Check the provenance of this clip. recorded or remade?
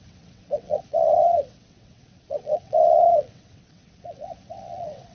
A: remade